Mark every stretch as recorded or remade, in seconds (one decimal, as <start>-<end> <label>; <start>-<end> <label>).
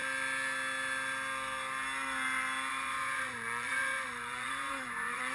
0.0-2.7 recorded; 2.7-5.3 remade